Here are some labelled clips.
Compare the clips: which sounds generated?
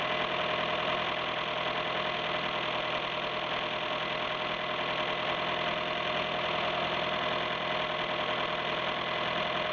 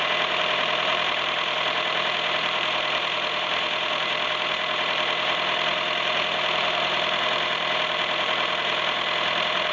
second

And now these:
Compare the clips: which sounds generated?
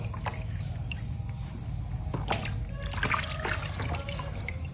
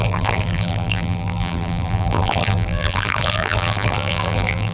second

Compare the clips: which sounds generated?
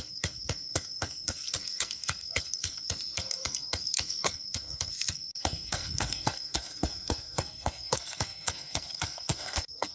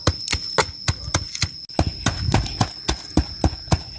first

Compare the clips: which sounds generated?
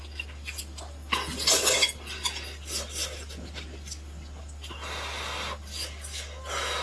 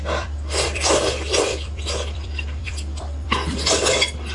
second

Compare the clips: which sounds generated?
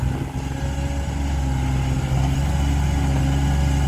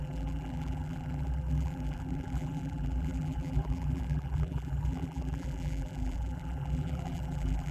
second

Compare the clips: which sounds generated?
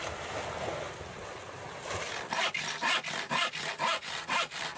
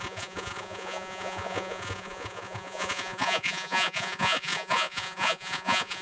second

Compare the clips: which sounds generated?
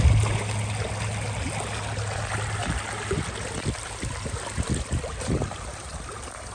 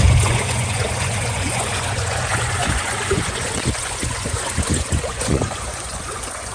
second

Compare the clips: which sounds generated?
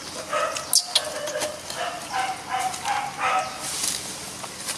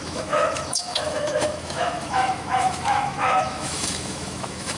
second